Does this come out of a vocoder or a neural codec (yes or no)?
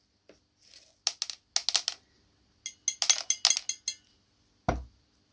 no